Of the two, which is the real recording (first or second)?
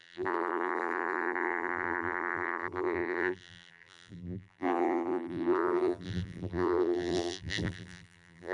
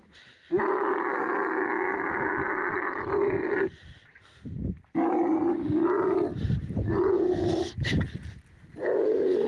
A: second